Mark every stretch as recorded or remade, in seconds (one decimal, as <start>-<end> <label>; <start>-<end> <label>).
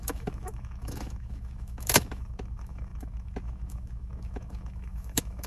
0.0-5.5 remade